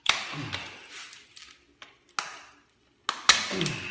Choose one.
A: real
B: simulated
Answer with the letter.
A